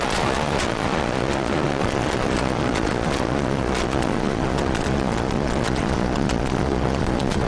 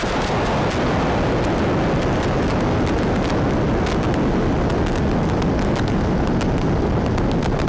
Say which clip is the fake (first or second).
first